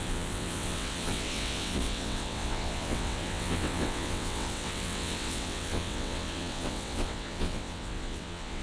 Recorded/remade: remade